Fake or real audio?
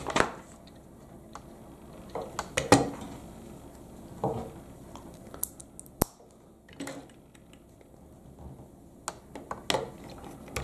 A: real